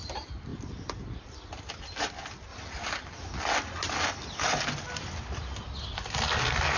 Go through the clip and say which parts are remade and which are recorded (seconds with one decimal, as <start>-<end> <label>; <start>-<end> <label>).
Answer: 0.0-0.5 recorded; 0.5-1.7 remade; 1.7-6.8 recorded

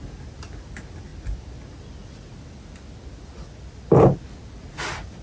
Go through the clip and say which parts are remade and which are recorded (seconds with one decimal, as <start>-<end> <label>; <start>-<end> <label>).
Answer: 0.0-5.2 recorded

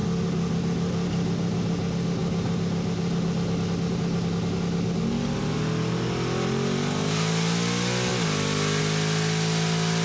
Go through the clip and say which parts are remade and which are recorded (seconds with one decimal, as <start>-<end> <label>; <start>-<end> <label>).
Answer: 0.0-10.0 recorded

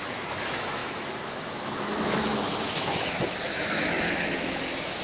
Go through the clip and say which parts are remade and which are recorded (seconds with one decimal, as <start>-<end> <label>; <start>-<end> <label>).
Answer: 0.0-5.0 remade

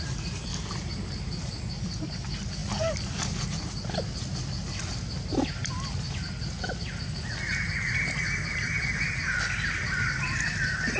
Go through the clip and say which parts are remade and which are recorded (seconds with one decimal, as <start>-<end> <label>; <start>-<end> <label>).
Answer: 0.0-0.5 recorded; 0.5-1.5 remade; 1.5-2.6 recorded; 2.6-4.0 remade; 4.0-11.0 recorded

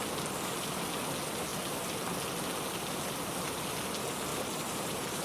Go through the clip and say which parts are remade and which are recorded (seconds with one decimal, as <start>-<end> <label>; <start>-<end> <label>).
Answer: 0.0-1.5 recorded; 1.5-2.1 remade; 2.1-4.3 recorded; 4.3-5.2 remade